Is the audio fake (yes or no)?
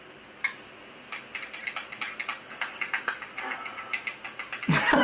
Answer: no